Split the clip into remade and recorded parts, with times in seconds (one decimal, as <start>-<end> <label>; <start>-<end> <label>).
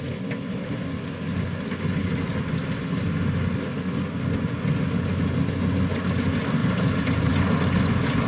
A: 0.0-6.6 recorded; 6.6-7.3 remade; 7.3-8.3 recorded